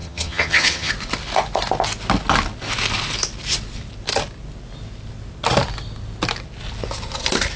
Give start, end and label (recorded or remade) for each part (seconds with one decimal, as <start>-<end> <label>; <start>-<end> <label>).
0.0-0.9 remade; 0.9-7.6 recorded

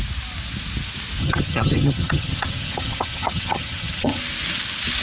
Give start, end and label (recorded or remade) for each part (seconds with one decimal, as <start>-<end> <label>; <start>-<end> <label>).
0.0-1.2 recorded; 1.2-4.2 remade; 4.2-5.0 recorded

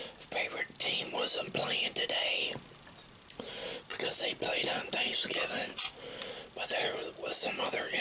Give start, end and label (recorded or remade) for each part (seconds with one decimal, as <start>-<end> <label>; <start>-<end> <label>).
0.0-8.0 recorded

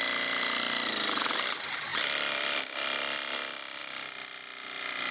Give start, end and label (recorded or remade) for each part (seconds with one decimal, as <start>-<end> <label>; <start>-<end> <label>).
0.0-5.1 recorded

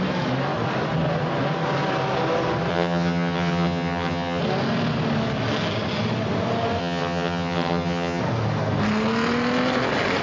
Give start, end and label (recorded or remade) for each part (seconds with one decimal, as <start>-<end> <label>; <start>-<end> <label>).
0.0-2.7 recorded; 2.7-4.4 remade; 4.4-6.8 recorded; 6.8-8.2 remade; 8.2-10.2 recorded

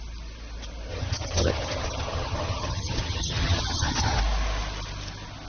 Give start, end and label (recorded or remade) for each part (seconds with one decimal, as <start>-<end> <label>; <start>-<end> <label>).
0.0-0.9 recorded; 0.9-4.2 remade; 4.2-5.5 recorded